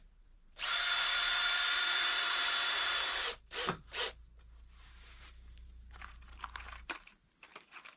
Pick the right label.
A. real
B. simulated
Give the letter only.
B